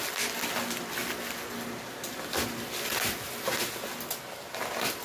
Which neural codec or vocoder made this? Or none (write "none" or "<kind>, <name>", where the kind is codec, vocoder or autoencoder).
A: none